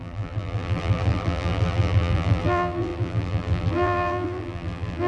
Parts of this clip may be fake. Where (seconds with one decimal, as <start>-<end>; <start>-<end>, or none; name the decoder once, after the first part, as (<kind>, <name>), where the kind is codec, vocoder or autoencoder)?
0.0-5.1 (vocoder, BigVGAN v2)